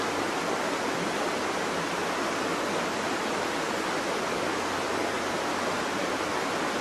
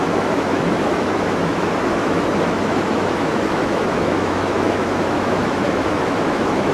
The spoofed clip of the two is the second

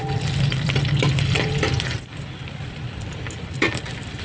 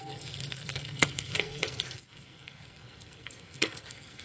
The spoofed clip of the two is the second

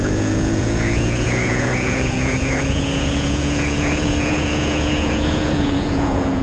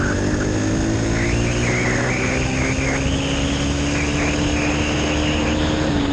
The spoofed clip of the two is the first